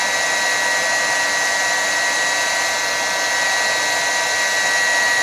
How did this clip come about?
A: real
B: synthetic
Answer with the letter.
A